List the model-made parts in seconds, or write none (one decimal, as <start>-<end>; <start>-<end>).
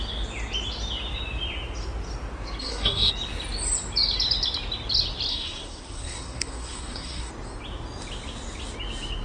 2.6-3.1; 5.3-7.3